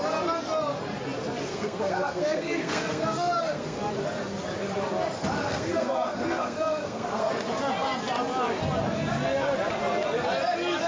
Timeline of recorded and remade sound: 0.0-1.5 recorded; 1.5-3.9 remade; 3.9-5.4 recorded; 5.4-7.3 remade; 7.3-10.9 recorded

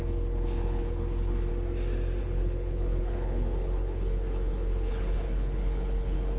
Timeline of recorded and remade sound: 0.0-1.5 remade; 1.5-2.2 recorded; 2.2-6.4 remade

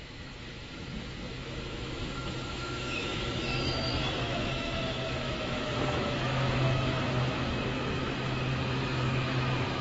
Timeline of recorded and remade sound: 0.0-9.8 remade

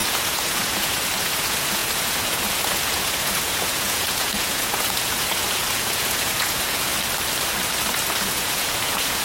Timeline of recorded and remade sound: 0.0-6.9 remade; 6.9-8.2 recorded; 8.2-9.2 remade

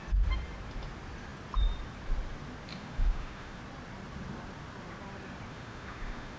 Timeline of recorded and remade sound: 0.0-2.7 recorded; 2.7-3.6 remade; 3.6-5.5 recorded; 5.5-6.4 remade

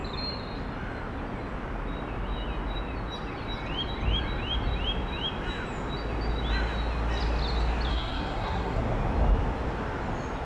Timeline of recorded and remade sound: 0.0-7.9 recorded; 7.9-8.8 remade; 8.8-10.4 recorded